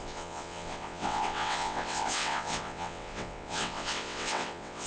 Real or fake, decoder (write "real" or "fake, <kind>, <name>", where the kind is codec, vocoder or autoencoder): fake, vocoder, WaveNeXt